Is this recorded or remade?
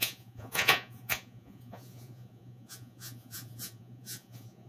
remade